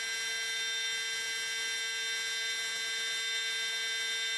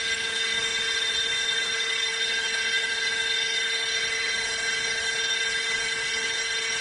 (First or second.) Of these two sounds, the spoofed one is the second